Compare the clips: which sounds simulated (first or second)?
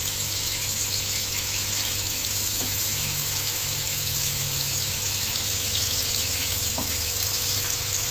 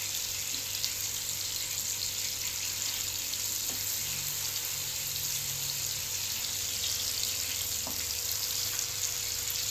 first